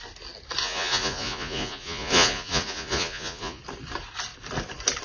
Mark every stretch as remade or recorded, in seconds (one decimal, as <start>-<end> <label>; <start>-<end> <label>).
0.0-0.6 recorded; 0.6-3.6 remade; 3.6-5.0 recorded